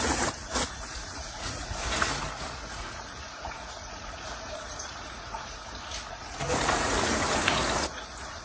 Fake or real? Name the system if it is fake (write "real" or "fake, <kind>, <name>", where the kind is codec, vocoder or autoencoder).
fake, vocoder, Vocos